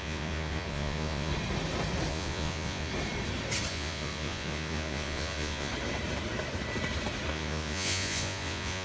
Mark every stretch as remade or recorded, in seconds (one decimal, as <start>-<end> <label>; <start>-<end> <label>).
0.0-1.3 remade; 1.3-2.1 recorded; 2.1-2.9 remade; 2.9-3.7 recorded; 3.7-5.7 remade; 5.7-7.3 recorded; 7.3-8.8 remade